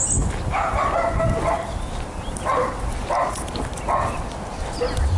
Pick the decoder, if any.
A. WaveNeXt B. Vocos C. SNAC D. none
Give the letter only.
D